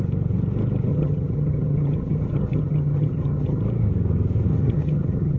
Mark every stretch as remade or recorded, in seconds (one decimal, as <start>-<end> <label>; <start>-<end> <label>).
0.0-0.9 recorded; 0.9-3.6 remade; 3.6-4.5 recorded; 4.5-5.4 remade